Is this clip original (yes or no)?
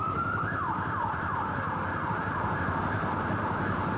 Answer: no